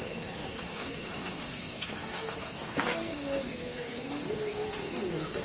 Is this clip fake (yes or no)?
yes